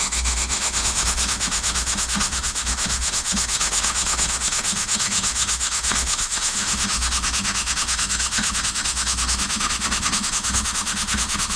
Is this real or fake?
fake